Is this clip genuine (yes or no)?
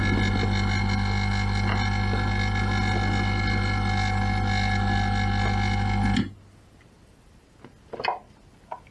yes